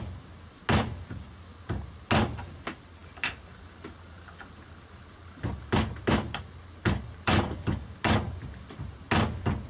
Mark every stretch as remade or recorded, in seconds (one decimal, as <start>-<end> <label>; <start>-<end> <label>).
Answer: 0.0-9.7 recorded